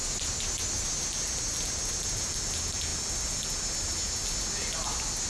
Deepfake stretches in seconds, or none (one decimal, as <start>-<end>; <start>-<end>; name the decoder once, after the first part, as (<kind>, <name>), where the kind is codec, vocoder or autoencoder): none